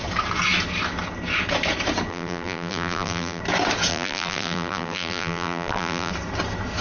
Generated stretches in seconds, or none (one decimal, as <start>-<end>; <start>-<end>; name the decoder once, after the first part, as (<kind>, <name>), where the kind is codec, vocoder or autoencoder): 2.1-3.4 (vocoder, BigVGAN v2); 3.9-6.1